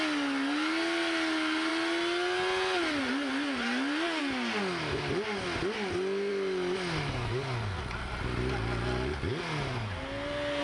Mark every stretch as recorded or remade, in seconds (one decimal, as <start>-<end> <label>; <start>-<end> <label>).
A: 0.0-10.6 recorded